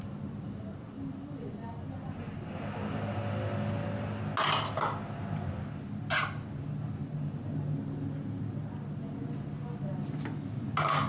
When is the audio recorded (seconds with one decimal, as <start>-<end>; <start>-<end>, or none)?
0.0-11.1